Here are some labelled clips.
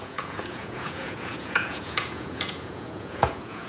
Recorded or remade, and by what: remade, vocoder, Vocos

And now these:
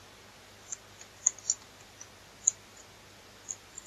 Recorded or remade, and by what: recorded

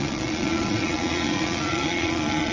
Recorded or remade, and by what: remade, vocoder, Vocos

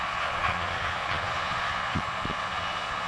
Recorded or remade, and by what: remade, vocoder, Vocos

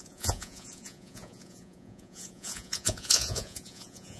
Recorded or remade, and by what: remade, vocoder, Vocos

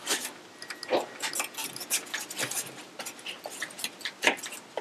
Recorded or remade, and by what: recorded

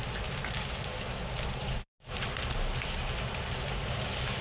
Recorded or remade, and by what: recorded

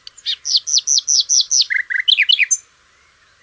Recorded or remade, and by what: recorded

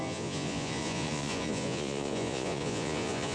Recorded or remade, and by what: remade, vocoder, Vocos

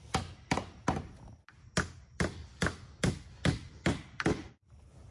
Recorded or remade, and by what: recorded